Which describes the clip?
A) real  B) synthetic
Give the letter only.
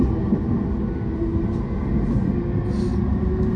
A